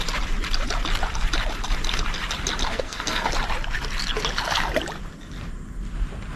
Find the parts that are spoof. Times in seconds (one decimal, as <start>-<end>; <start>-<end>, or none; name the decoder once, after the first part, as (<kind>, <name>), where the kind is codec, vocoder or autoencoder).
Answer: 2.7-3.3 (codec, SNAC)